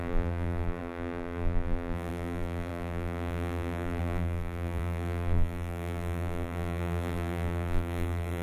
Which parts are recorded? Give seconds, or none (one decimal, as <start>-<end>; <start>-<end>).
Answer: none